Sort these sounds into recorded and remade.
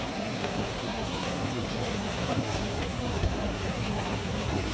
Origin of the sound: remade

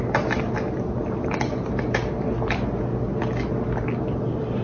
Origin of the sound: recorded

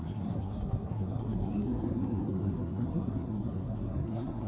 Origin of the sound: remade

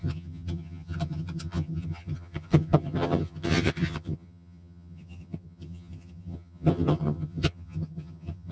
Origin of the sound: remade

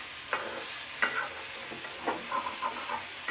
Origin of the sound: recorded